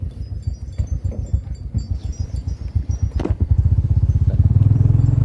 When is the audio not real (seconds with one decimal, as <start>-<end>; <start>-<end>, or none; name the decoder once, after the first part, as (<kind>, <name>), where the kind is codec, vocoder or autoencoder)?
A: 2.1-5.2 (vocoder, BigVGAN v2)